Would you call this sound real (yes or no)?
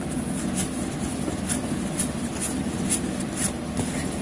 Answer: yes